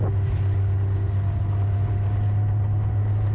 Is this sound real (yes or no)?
yes